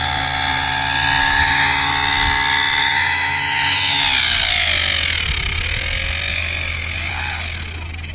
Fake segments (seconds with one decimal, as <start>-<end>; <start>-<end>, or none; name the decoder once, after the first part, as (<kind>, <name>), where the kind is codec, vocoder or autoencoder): 1.2-1.9 (autoencoder, DAC-VAE); 2.8-4.0; 6.3-7.1